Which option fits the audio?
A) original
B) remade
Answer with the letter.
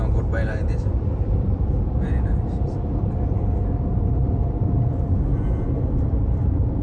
B